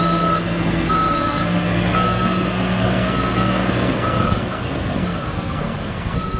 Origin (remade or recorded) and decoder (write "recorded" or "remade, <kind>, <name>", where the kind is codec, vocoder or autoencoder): remade, codec, SNAC